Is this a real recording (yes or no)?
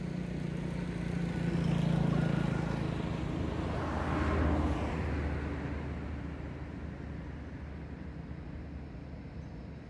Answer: yes